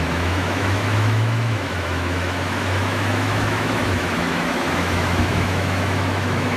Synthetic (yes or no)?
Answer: yes